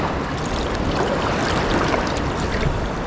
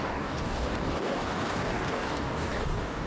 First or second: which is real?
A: first